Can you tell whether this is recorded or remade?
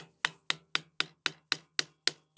recorded